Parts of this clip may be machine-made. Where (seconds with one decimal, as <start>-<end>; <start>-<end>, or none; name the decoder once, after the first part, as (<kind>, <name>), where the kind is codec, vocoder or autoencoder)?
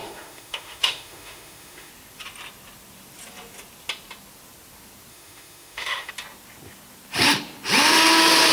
0.0-1.9 (autoencoder, DAC-VAE); 5.1-6.1